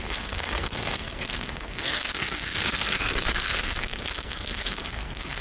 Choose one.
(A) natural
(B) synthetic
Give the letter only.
B